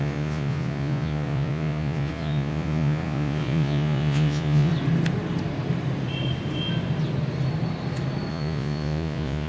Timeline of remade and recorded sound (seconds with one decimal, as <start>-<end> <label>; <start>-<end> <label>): 0.0-4.7 remade; 4.7-8.3 recorded; 8.3-9.5 remade